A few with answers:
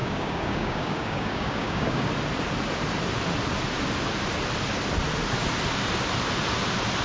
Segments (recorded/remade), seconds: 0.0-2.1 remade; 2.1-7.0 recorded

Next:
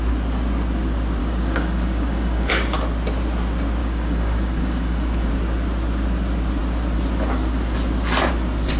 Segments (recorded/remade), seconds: 0.0-1.2 recorded; 1.2-2.5 remade; 2.5-3.8 recorded; 3.8-5.3 remade; 5.3-8.8 recorded

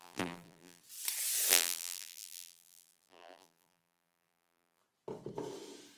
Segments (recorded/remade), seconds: 0.0-0.8 remade; 0.8-1.5 recorded; 1.5-4.8 remade; 4.8-6.0 recorded

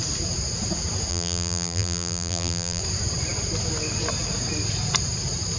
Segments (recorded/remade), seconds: 0.0-1.1 recorded; 1.1-2.8 remade; 2.8-5.6 recorded

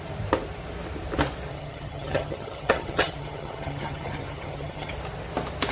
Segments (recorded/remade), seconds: 0.0-1.5 recorded; 1.5-4.9 remade; 4.9-5.7 recorded